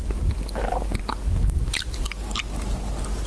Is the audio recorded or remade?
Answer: recorded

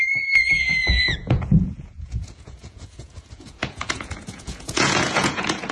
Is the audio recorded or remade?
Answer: remade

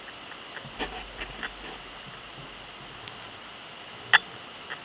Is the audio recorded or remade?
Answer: recorded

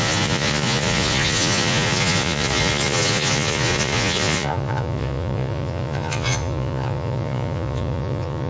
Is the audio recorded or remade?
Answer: remade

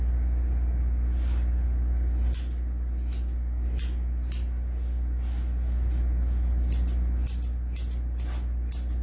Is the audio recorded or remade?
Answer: recorded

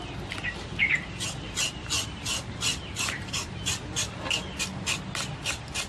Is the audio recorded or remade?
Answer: recorded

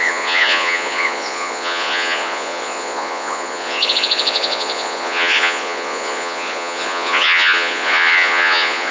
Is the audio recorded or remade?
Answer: remade